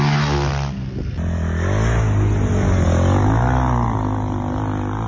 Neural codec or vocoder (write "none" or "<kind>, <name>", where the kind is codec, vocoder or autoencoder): none